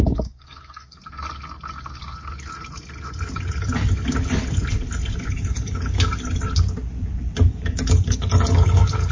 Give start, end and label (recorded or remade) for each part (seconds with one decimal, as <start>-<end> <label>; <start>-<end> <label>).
0.0-1.0 remade; 1.0-5.2 recorded; 5.2-6.1 remade; 6.1-7.4 recorded; 7.4-9.1 remade